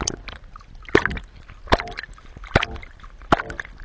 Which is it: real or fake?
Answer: real